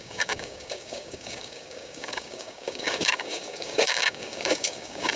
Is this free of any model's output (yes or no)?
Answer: no